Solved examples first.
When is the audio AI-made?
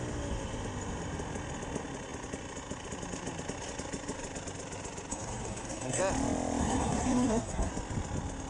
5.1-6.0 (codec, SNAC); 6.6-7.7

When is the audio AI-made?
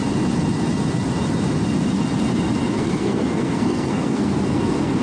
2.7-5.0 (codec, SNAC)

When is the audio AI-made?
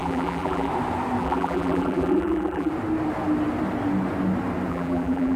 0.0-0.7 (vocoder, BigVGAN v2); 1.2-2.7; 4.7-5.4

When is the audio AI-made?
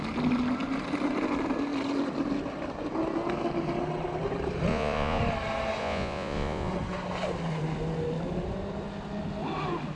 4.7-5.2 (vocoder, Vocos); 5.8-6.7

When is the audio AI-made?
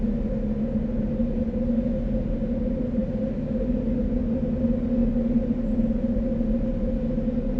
none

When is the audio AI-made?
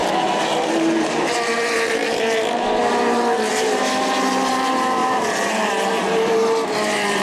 0.0-2.8 (vocoder, BigVGAN v2); 3.5-7.2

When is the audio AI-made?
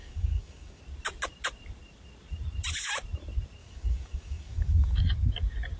0.0-0.8 (codec, DAC); 3.6-5.0